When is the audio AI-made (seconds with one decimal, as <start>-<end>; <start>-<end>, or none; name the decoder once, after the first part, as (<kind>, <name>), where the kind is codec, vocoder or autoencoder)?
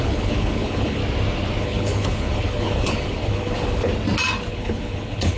0.0-1.0 (codec, HILCodec); 1.6-3.9; 4.5-5.4